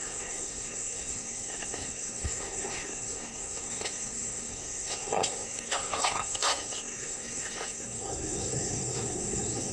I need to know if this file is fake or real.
fake